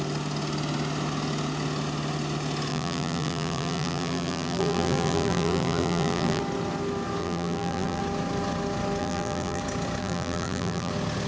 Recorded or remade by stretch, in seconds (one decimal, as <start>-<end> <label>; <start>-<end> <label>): 0.0-2.7 recorded; 2.7-6.4 remade; 6.4-7.2 recorded; 7.2-8.0 remade; 8.0-9.0 recorded; 9.0-9.6 remade; 9.6-10.0 recorded; 10.0-10.9 remade; 10.9-11.3 recorded